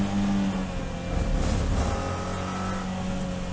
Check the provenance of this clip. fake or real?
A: real